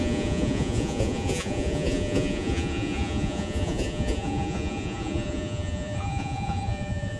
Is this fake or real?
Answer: fake